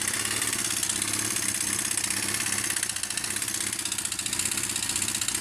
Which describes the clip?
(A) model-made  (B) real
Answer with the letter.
B